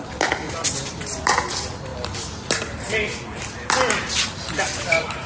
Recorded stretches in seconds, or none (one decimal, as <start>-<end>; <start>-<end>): 0.0-5.3